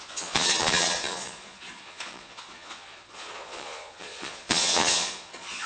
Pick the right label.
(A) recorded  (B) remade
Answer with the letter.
B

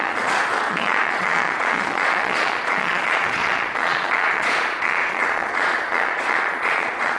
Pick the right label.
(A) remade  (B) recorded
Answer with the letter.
A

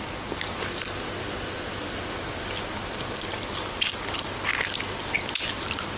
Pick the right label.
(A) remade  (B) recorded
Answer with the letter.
B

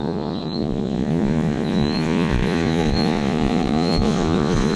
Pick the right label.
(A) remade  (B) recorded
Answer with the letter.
A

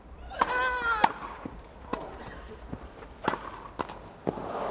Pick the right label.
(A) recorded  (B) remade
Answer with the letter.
A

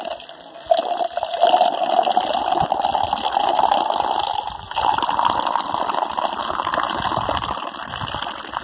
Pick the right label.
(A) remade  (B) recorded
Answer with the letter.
B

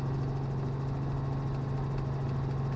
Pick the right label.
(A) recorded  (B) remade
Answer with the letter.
A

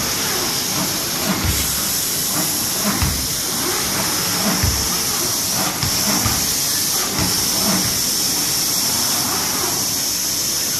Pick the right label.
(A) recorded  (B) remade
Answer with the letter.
A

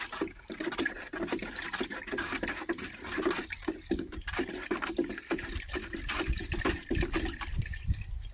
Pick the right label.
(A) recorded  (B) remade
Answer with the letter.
A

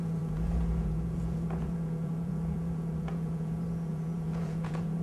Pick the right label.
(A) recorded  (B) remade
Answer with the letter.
B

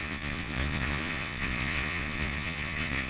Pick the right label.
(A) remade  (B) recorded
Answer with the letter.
A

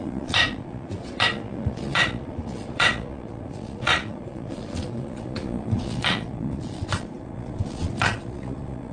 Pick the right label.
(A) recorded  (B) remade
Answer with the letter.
B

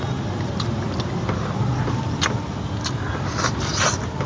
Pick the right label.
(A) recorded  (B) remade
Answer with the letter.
A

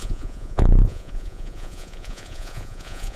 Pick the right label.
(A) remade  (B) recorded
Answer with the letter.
A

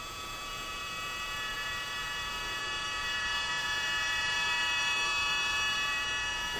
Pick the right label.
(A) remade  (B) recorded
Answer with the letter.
A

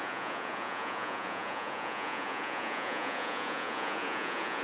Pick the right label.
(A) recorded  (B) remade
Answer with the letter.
B